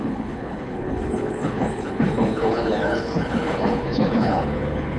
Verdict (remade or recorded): remade